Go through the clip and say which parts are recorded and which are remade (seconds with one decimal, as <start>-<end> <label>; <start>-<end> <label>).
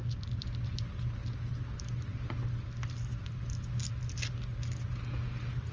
0.0-5.7 recorded